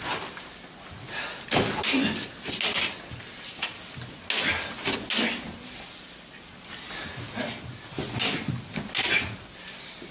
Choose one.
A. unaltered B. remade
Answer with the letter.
A